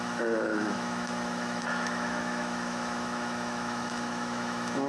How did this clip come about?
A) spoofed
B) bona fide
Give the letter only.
A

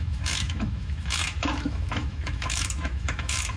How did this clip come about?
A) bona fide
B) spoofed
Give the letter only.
B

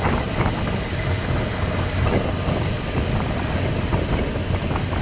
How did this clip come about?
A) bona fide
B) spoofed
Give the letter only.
A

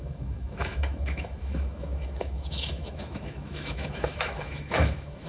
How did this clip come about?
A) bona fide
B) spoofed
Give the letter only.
B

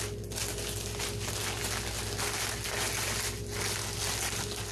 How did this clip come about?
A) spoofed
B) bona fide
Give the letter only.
B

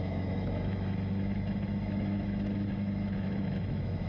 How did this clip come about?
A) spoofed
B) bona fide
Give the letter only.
A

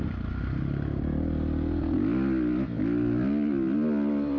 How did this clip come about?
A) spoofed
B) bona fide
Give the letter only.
B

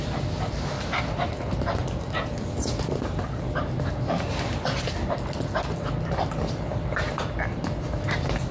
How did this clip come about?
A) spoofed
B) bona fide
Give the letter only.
B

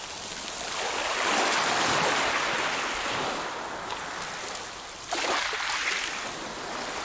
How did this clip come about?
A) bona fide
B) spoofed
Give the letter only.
A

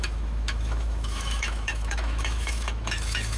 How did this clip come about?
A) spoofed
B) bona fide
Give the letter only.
A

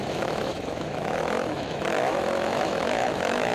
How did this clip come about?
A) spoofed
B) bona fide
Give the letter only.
A